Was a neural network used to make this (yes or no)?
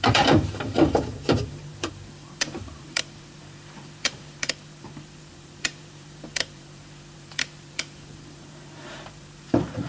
yes